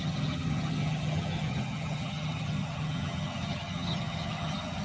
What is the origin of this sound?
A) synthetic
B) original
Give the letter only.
A